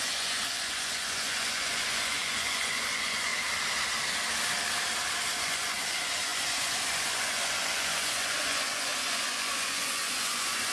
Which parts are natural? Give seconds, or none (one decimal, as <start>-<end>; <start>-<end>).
3.3-5.4